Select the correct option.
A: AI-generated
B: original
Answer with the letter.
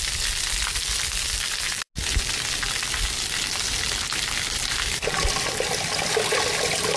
B